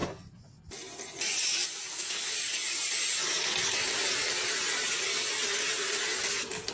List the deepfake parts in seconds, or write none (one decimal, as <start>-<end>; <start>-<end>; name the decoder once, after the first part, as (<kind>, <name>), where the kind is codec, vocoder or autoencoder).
none